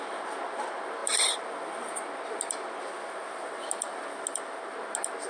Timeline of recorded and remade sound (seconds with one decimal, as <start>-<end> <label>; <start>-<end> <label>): 0.0-5.3 recorded